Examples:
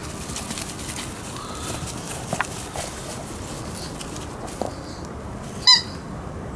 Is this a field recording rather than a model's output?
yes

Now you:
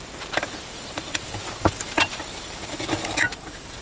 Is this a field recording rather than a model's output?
no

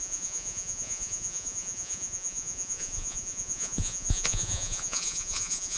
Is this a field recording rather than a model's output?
no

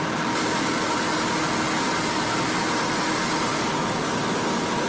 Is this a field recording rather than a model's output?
yes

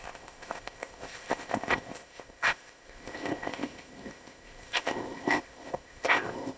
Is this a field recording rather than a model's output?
no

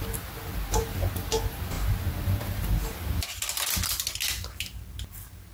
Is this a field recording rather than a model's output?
yes